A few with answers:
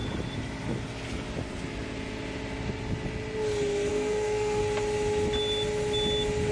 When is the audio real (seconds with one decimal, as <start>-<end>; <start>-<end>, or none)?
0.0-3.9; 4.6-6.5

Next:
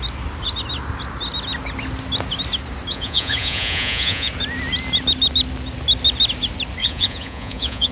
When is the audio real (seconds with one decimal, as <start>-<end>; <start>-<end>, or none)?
0.0-2.9; 4.3-6.8

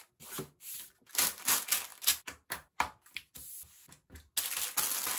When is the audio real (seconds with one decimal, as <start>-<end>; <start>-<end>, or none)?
0.0-5.2

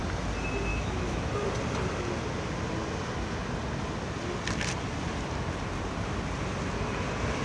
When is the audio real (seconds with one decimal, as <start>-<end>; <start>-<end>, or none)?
0.0-0.7; 1.3-7.4

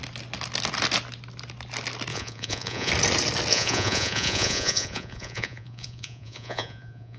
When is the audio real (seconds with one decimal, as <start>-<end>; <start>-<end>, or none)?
0.0-2.1; 2.9-3.5

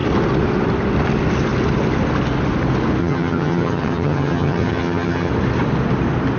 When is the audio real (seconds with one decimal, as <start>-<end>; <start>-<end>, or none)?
0.0-3.0; 5.3-6.4

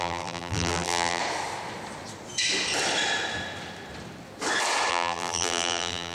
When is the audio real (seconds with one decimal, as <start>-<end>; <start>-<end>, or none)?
1.2-4.9

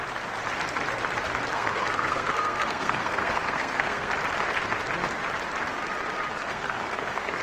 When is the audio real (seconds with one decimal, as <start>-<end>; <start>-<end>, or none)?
0.0-1.5; 4.1-6.3